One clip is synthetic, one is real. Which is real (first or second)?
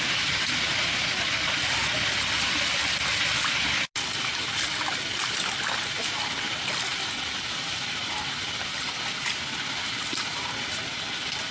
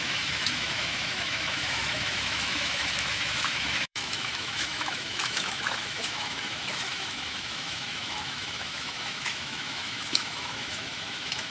first